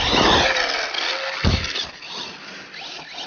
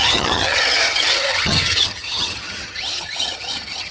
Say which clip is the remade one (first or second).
second